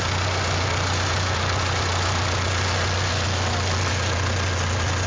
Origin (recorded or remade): recorded